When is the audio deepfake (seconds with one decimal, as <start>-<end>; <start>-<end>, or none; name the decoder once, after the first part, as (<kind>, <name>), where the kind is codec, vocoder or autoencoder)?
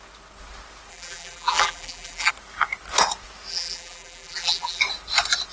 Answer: 0.9-2.3 (vocoder, BigVGAN v2); 3.5-4.8